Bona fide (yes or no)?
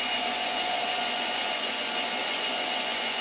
no